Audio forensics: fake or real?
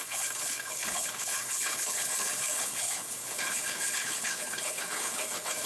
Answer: fake